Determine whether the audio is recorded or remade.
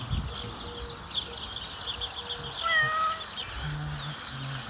recorded